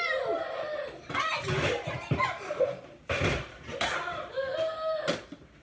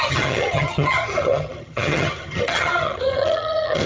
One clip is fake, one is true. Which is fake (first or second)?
second